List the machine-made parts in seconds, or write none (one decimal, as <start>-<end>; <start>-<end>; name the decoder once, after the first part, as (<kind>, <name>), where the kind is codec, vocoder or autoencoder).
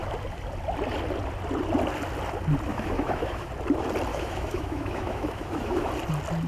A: 2.7-3.5 (autoencoder, DAC-VAE); 4.1-5.9